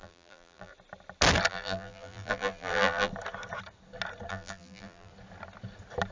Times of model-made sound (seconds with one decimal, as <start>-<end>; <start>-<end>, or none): 0.0-0.7; 1.5-3.1; 4.3-5.1